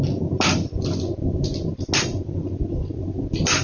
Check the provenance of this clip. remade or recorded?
recorded